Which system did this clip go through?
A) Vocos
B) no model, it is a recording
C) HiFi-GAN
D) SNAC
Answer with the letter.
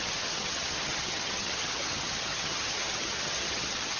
C